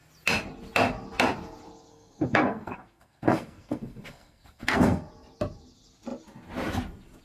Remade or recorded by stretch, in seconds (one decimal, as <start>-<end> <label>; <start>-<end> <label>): 0.0-1.9 recorded; 1.9-5.1 remade; 5.1-7.2 recorded

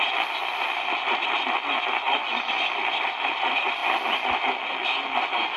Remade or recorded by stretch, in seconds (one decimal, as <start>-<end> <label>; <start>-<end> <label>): 0.0-5.6 recorded

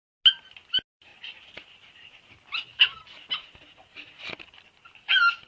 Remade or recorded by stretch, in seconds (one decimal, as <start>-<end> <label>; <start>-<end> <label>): 0.0-5.5 recorded

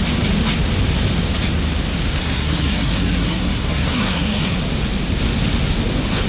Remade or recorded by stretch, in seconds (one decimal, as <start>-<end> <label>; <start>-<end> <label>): 0.0-2.2 recorded; 2.2-4.6 remade; 4.6-6.3 recorded

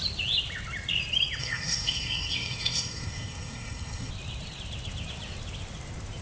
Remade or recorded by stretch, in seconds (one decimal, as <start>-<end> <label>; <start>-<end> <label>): 0.0-1.4 recorded; 1.4-4.1 remade; 4.1-6.2 recorded

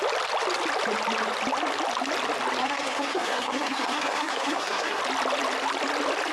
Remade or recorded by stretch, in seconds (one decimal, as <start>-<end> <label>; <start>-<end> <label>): 0.0-2.6 recorded; 2.6-5.0 remade; 5.0-6.3 recorded

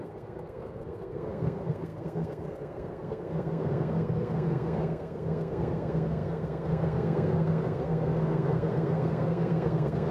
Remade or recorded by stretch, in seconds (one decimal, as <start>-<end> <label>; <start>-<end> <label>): 0.0-10.1 remade